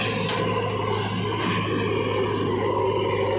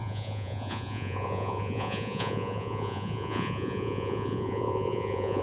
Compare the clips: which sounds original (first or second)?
first